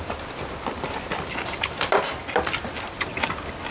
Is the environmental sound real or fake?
real